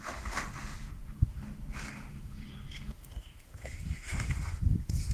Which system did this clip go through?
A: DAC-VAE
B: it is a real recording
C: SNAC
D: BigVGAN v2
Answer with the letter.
A